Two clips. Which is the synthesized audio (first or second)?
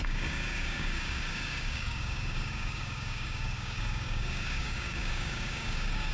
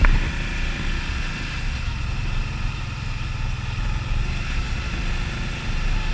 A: first